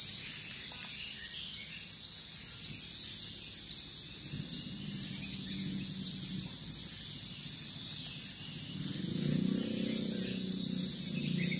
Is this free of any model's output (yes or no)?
yes